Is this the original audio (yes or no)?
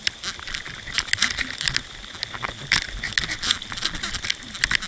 yes